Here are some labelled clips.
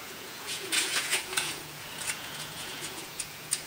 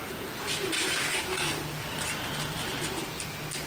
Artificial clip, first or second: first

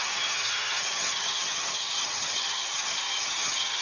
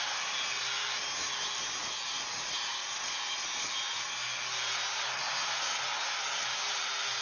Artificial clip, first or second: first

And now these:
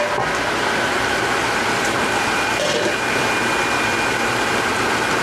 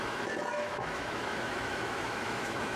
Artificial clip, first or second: second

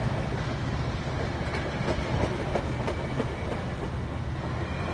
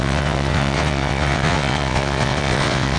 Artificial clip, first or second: second